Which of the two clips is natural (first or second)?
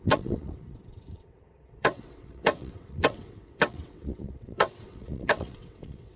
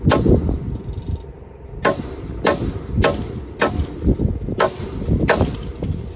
second